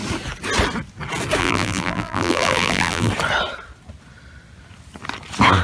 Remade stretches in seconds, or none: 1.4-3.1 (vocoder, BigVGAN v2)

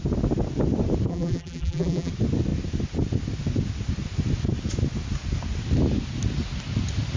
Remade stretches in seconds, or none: 1.1-2.1 (vocoder, BigVGAN v2)